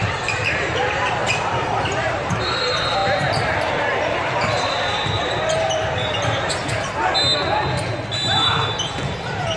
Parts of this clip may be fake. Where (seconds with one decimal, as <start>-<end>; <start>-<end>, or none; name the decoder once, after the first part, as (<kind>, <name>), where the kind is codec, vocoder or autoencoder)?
0.0-1.2 (vocoder, BigVGAN v2); 1.8-6.6; 8.3-9.6